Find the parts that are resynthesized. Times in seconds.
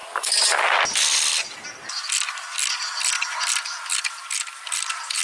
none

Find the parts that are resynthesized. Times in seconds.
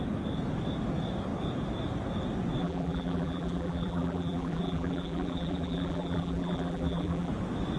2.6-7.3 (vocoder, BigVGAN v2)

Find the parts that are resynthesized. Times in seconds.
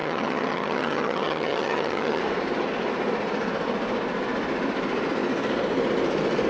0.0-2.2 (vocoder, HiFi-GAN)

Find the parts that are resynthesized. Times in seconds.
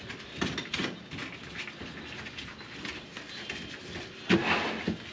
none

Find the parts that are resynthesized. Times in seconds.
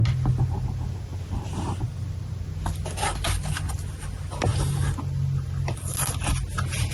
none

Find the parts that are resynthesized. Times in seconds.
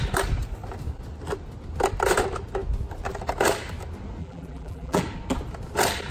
4.2-5.0 (vocoder, BigVGAN v2)